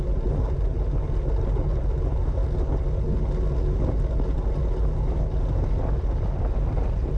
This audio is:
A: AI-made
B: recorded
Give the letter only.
B